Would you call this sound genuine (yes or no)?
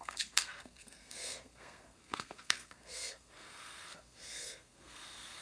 no